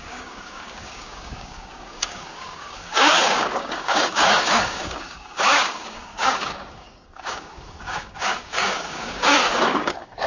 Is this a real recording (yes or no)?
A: no